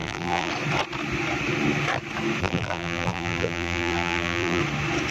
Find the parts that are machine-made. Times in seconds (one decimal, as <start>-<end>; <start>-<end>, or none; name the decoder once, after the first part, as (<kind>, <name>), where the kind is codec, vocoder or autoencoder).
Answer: 0.0-0.5 (vocoder, BigVGAN v2); 2.4-4.6